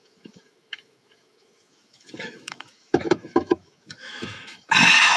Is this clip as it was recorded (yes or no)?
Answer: no